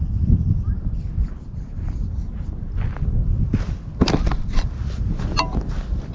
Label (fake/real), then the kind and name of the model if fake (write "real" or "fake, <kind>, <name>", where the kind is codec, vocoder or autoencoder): real